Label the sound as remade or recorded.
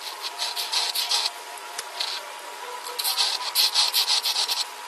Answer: recorded